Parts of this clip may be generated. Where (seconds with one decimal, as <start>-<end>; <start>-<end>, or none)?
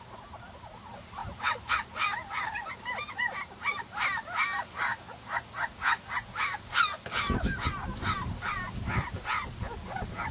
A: none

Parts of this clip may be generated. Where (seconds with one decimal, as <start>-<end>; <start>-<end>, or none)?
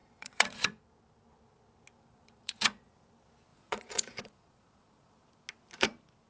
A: 0.0-0.8; 2.1-2.9; 3.5-5.3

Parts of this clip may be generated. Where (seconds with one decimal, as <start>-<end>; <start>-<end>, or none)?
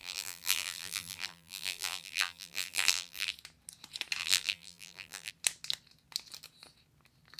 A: 0.0-3.3; 4.2-5.3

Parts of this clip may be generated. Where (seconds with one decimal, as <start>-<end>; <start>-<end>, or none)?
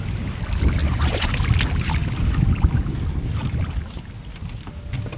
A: 0.8-1.3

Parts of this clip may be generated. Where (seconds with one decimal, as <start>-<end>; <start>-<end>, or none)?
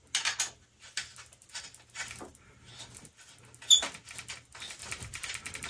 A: none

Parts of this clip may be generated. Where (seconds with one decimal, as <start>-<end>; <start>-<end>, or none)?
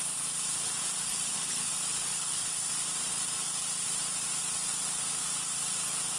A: 1.1-1.7; 2.1-2.7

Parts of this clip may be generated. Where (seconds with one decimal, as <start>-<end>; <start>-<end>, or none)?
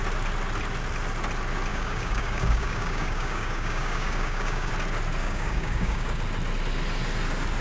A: 1.7-4.7; 5.2-6.2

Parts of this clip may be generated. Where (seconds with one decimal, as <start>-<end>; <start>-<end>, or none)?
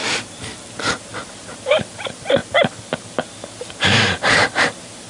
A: 1.0-2.4; 3.6-5.1